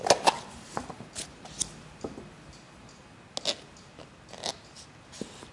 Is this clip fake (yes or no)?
no